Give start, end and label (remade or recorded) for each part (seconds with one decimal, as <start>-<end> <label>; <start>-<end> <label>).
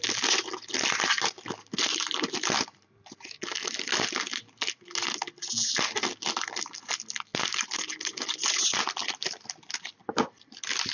0.0-10.9 recorded